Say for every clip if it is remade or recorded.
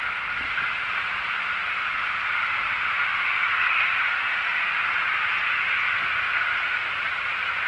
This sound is recorded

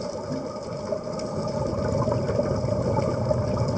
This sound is recorded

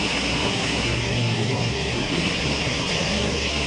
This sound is remade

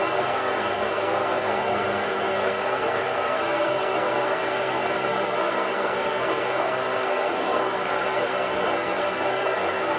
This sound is remade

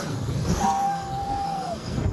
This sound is remade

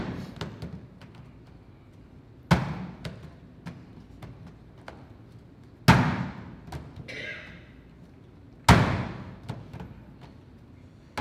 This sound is recorded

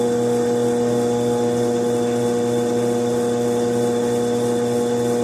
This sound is recorded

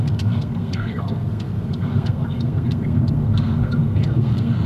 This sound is remade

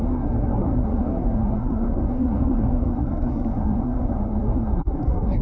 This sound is remade